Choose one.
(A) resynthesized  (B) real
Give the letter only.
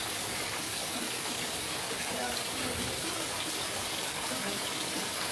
A